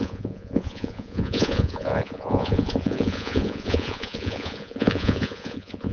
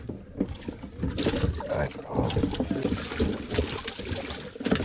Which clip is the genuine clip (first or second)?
second